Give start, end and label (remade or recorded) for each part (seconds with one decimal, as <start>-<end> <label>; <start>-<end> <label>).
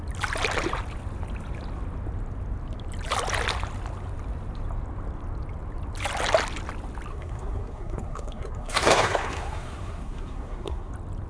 0.0-7.1 recorded; 7.1-10.9 remade; 10.9-11.3 recorded